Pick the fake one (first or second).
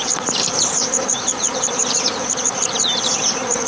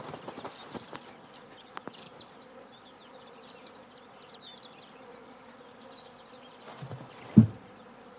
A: first